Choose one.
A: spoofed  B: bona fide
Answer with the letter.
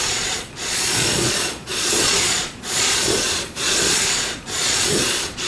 A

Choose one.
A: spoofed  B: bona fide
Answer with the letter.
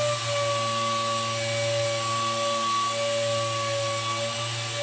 B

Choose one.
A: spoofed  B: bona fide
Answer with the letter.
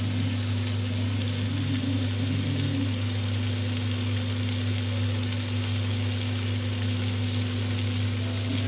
B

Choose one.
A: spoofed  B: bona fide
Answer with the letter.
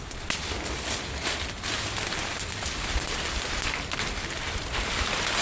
B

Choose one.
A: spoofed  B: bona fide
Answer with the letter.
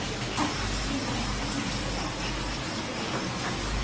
B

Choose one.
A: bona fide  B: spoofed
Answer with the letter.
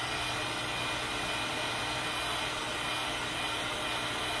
A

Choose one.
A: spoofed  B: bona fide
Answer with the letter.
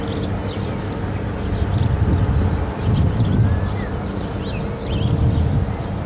B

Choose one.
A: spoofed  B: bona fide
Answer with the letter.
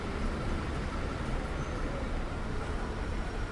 B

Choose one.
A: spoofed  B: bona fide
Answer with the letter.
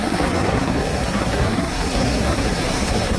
A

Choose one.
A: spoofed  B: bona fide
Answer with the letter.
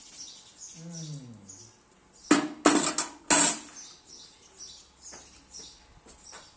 B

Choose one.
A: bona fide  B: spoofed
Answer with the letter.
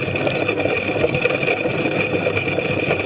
A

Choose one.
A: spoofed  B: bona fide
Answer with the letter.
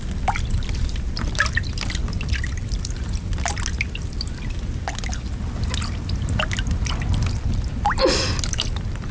B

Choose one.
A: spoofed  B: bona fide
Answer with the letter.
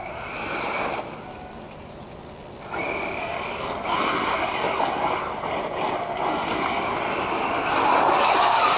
B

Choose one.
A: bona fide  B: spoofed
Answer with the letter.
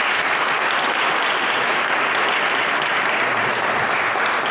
A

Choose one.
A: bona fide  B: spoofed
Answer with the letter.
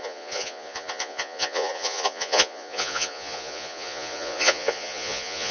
B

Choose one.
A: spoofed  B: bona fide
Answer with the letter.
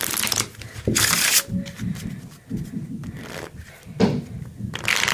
B